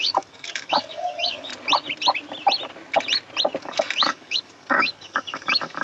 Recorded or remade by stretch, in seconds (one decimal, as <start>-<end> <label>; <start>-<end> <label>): 0.0-1.5 remade; 1.5-3.6 recorded; 3.6-5.8 remade